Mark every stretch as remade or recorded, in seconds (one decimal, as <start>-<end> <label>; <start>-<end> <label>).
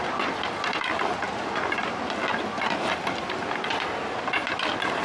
0.0-2.3 recorded; 2.3-2.9 remade; 2.9-5.0 recorded